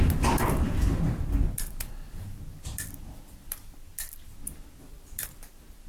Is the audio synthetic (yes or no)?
no